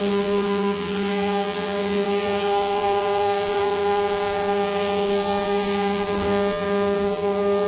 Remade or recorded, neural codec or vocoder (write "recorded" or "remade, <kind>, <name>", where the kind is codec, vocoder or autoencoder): remade, vocoder, BigVGAN v2